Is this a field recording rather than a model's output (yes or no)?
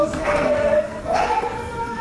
no